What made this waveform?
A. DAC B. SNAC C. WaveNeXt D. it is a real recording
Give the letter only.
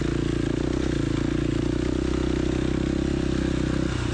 D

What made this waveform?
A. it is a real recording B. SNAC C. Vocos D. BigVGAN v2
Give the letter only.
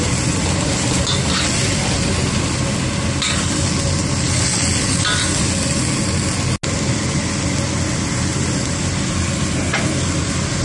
A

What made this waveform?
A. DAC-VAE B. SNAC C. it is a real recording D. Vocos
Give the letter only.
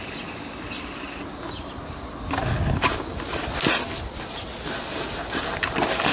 C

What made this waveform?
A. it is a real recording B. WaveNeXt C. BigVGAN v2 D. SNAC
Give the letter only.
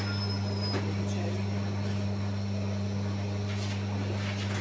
A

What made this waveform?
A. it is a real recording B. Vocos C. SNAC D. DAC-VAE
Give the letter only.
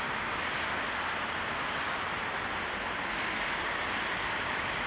A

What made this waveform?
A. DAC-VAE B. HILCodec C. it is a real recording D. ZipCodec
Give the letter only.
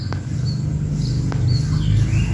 C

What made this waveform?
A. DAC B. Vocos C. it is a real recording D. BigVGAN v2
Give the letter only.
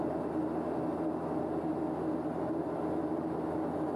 C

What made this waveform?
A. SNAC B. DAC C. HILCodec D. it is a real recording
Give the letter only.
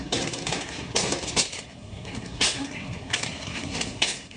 A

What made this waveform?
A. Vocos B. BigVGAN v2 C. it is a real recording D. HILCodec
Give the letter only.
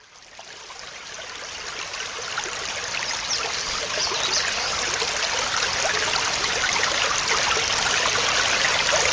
C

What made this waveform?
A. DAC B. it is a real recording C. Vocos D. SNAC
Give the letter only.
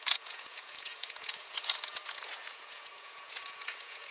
C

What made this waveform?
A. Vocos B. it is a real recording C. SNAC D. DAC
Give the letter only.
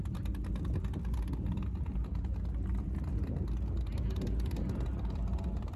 B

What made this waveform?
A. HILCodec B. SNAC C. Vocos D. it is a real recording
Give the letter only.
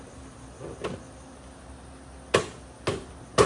D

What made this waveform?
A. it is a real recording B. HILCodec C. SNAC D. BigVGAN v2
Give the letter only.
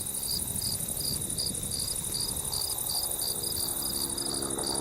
A